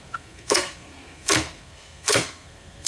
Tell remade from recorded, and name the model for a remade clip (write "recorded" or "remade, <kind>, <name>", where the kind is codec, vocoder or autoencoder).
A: remade, codec, SNAC